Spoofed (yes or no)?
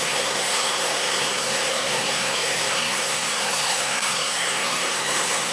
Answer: yes